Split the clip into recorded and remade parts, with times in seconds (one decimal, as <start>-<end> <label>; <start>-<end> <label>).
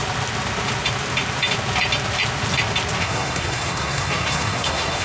0.0-3.0 recorded; 3.0-5.0 remade